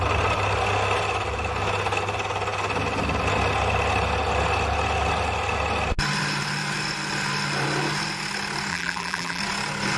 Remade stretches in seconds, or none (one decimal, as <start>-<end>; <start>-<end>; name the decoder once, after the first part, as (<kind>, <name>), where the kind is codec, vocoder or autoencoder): 8.7-9.4 (vocoder, BigVGAN v2)